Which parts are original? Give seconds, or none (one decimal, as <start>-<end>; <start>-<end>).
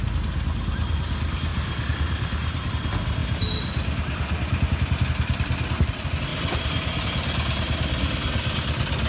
0.0-1.5; 2.7-6.3; 7.0-9.1